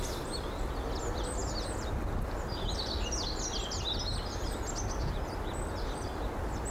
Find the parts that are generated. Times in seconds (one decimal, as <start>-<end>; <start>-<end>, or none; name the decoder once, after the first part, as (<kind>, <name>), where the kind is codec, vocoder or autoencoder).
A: none